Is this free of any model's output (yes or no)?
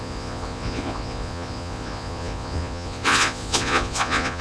no